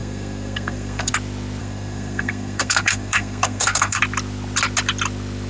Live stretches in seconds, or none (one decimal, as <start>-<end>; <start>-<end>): 1.1-1.6; 4.0-5.5